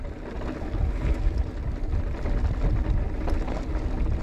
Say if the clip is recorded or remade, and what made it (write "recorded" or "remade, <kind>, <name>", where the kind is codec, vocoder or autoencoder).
recorded